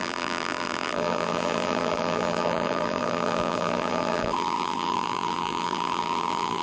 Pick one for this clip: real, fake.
fake